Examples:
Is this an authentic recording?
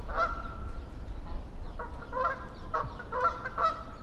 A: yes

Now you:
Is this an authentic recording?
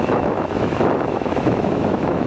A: no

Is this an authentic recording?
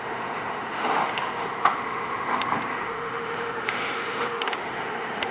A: no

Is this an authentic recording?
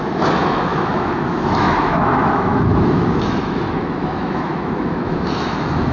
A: no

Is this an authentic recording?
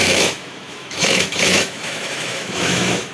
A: no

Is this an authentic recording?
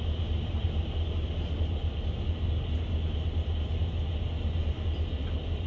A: yes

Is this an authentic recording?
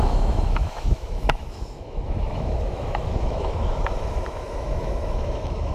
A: no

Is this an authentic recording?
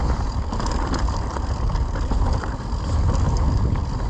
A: yes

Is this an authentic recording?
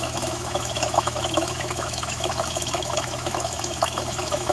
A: no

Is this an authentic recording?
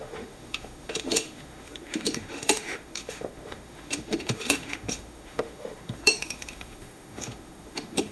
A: no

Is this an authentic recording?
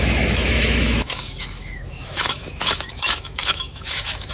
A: no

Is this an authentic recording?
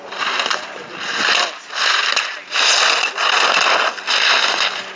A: yes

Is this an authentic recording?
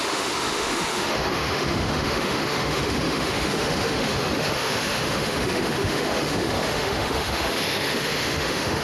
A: no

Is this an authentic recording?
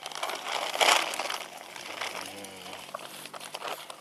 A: yes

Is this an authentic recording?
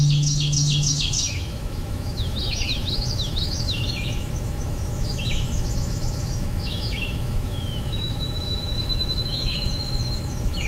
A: no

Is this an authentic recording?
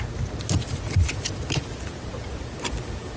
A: yes